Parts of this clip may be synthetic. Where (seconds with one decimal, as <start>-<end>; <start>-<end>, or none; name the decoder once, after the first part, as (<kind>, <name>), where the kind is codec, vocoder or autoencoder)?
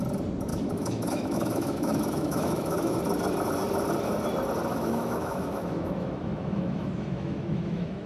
0.5-3.0 (autoencoder, DAC-VAE); 4.7-8.1